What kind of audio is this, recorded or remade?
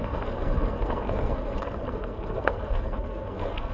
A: remade